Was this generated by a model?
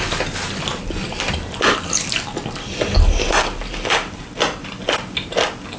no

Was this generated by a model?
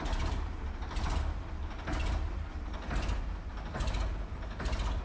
no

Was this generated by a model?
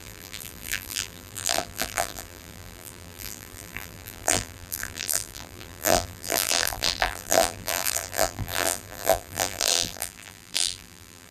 yes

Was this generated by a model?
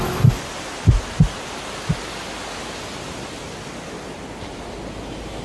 no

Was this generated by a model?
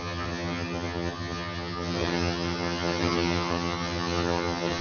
yes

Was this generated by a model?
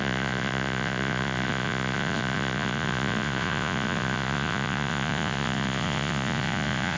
yes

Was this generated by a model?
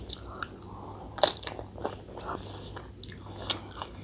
no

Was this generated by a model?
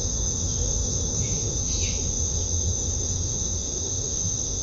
yes